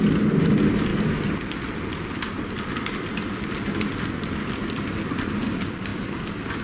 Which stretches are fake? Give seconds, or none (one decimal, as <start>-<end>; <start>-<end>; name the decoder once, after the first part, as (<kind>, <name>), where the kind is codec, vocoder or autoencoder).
none